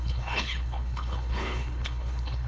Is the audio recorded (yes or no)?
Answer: no